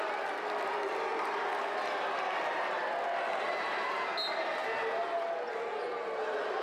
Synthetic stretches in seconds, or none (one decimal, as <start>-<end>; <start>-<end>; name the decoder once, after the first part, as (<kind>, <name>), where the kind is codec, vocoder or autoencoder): none